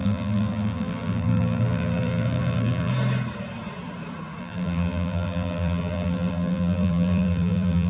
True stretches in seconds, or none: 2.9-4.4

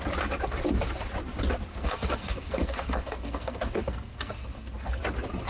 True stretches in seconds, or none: 0.0-1.7; 5.0-5.5

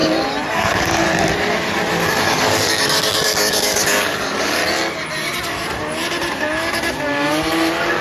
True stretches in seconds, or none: 0.0-0.5; 1.0-2.2; 4.6-8.0

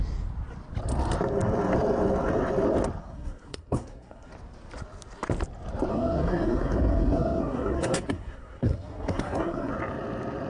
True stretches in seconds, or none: 0.0-3.0; 4.3-5.9; 9.7-10.5

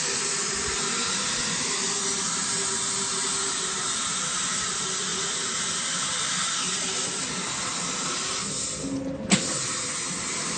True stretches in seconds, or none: 0.0-10.6

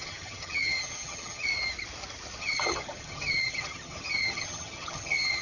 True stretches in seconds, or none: 1.5-2.4

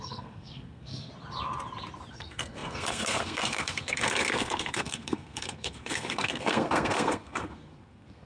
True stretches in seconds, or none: 1.1-2.1

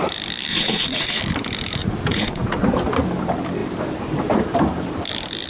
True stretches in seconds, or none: 0.0-0.5; 1.2-1.8; 2.7-5.5